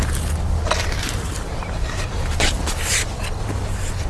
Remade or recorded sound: recorded